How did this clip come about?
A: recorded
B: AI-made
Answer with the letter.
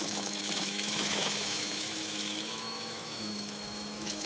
B